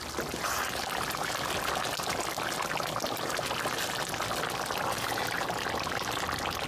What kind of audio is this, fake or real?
real